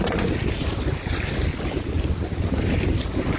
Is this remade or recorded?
recorded